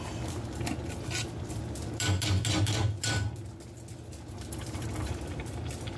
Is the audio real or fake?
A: real